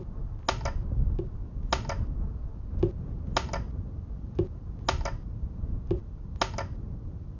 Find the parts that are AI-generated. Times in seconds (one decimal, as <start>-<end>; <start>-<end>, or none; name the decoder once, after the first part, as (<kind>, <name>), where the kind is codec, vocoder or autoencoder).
none